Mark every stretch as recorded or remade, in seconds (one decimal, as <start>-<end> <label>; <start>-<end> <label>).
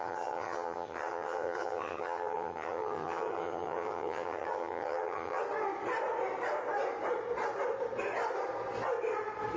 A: 0.0-5.4 remade; 5.4-9.6 recorded